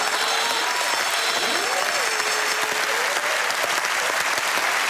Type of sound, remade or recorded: recorded